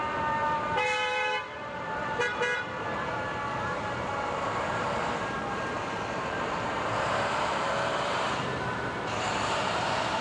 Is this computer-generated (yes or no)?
yes